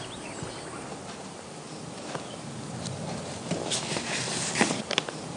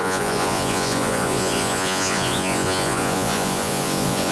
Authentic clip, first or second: first